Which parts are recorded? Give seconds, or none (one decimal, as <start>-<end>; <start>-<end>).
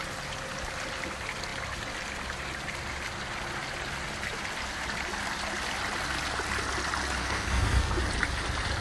0.0-7.2; 8.0-8.8